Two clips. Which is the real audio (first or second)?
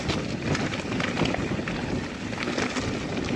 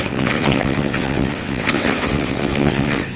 first